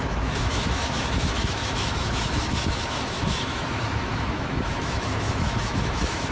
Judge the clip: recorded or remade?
remade